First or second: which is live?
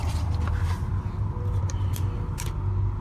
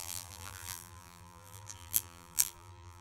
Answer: first